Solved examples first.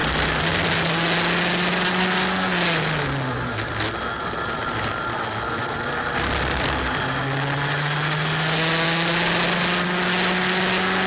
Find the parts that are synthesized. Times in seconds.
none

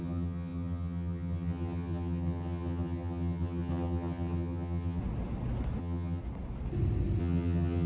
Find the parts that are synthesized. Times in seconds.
0.0-5.0; 5.8-6.2; 7.2-7.9